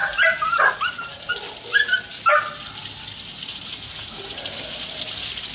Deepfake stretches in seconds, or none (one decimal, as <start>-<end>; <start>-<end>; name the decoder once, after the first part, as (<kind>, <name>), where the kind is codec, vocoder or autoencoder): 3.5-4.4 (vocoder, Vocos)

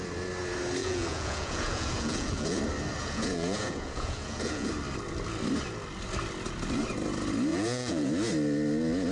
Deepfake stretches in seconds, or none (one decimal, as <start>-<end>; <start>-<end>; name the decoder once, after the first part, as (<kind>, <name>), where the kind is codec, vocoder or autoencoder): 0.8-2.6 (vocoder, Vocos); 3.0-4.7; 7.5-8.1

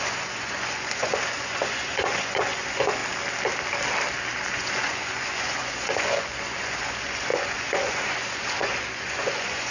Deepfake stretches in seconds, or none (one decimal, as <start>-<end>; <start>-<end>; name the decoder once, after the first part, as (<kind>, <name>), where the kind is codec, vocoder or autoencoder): 0.0-3.0 (vocoder, Vocos); 4.5-9.7

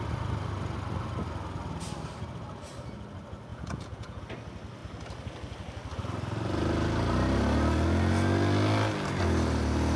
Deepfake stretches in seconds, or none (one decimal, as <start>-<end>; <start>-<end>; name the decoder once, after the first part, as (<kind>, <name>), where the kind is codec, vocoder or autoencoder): 3.5-4.2 (vocoder, Vocos)

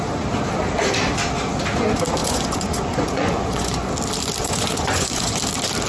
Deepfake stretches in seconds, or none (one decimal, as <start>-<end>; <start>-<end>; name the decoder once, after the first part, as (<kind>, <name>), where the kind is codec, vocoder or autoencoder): 2.2-3.9 (vocoder, Vocos); 4.4-5.4

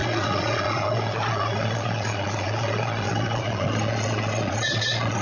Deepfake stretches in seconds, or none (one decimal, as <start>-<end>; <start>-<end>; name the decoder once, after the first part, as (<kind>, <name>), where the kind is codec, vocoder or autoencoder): 0.0-5.2 (vocoder, Vocos)

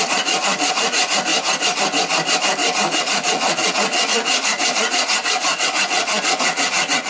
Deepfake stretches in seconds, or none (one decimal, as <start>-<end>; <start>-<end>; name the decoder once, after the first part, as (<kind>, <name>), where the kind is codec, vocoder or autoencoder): 0.0-1.3 (vocoder, Vocos); 3.0-7.1